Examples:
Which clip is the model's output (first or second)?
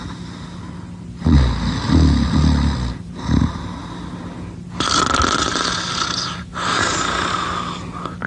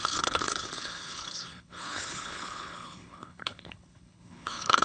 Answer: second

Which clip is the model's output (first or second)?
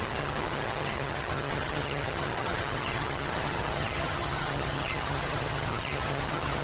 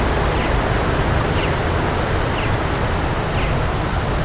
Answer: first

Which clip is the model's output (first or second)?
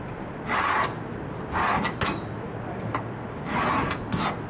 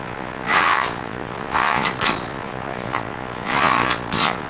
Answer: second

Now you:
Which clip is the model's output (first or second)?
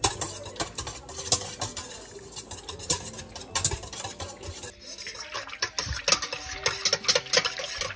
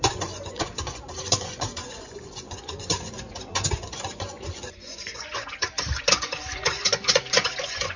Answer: second